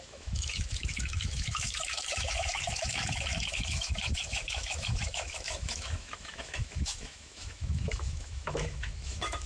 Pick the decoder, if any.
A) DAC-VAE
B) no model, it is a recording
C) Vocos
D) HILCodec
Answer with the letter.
A